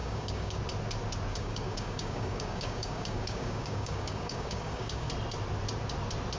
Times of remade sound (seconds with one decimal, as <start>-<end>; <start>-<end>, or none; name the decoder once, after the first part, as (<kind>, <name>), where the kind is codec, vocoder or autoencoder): 0.0-0.6 (codec, DAC); 1.3-5.1